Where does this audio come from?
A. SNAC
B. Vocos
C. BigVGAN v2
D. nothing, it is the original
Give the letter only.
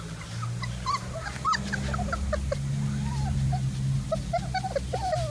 D